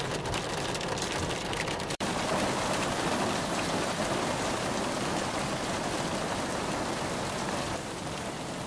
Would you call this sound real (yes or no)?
no